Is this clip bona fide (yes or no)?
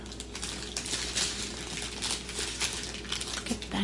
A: yes